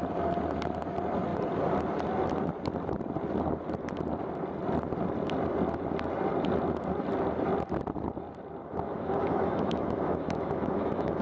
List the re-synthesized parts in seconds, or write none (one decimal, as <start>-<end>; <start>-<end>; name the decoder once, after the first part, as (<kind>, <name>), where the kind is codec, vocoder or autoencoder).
8.6-11.2 (autoencoder, DAC-VAE)